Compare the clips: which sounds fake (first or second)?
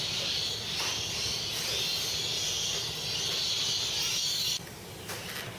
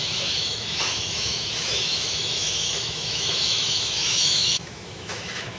second